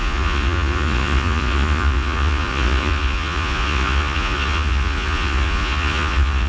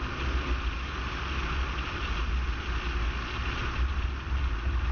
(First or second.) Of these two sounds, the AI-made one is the first